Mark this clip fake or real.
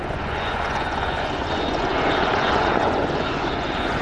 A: fake